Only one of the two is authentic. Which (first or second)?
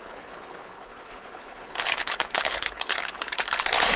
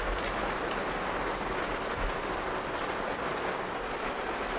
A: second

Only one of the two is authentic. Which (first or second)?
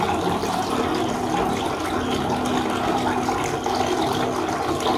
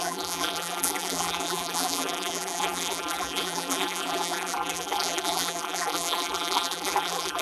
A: first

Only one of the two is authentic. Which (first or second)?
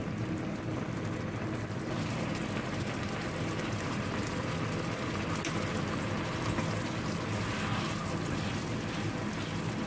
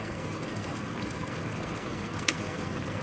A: first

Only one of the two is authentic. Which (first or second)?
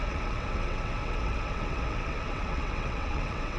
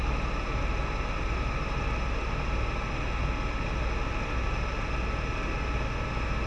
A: second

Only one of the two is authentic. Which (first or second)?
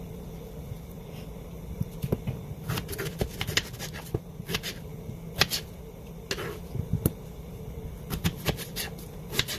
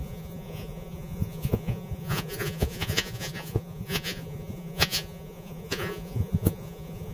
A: first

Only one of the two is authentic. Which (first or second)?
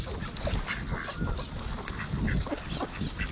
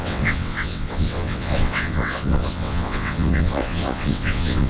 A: first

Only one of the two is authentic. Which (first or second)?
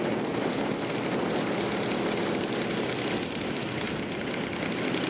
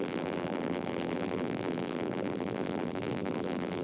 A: first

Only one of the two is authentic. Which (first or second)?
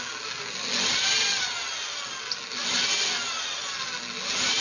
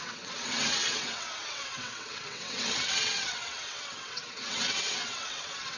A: first